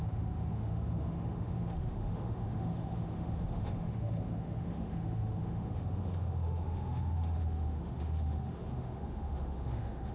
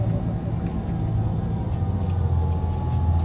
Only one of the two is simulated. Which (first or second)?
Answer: first